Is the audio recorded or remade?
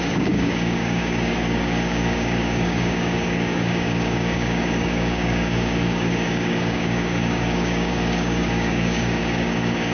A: remade